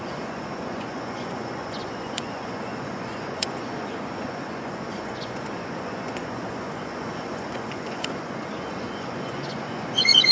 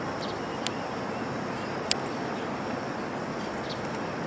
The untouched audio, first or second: second